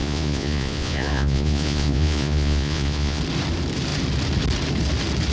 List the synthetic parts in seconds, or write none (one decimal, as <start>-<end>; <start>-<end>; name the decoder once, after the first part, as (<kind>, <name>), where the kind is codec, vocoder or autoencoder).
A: 0.0-3.2 (vocoder, Vocos)

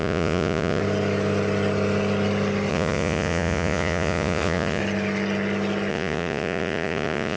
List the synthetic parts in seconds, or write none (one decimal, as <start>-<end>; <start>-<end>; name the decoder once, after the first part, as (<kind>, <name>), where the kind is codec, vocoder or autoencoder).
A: 0.0-0.8 (vocoder, Vocos); 2.7-4.8; 5.9-7.4